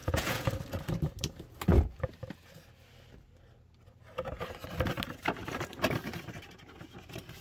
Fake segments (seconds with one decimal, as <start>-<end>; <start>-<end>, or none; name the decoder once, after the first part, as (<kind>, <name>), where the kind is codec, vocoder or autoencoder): 0.0-0.5 (vocoder, Vocos)